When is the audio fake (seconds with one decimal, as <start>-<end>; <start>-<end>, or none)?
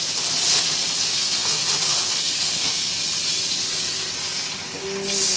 1.1-2.9; 3.6-4.1